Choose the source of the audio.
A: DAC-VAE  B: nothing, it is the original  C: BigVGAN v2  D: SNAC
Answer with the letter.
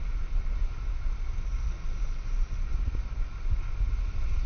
B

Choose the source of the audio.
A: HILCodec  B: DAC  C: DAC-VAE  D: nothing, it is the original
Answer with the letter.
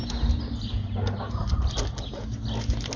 D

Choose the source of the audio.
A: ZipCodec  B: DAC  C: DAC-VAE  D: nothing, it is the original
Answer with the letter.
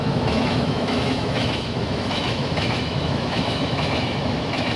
C